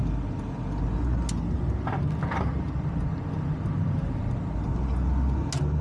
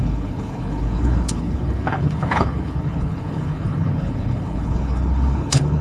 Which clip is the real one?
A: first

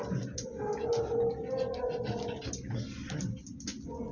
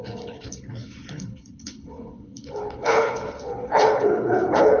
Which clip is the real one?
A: first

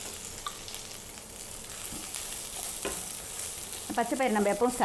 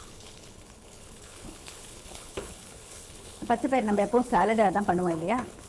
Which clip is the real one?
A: first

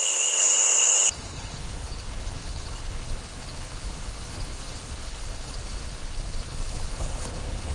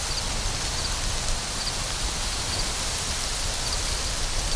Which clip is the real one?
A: second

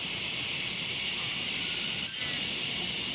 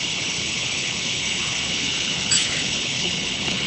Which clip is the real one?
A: first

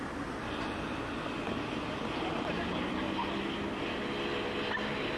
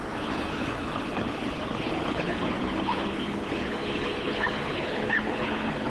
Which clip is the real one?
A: first